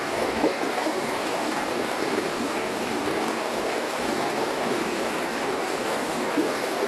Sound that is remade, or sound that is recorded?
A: remade